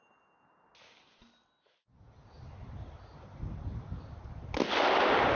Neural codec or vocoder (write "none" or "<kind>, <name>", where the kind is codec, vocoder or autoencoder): none